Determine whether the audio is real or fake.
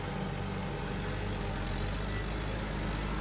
real